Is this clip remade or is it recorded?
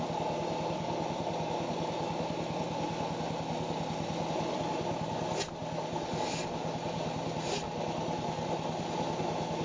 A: recorded